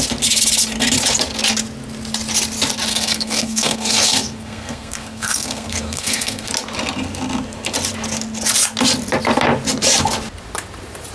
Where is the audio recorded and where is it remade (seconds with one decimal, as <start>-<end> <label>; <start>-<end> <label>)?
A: 0.0-2.9 recorded; 2.9-6.5 remade; 6.5-11.1 recorded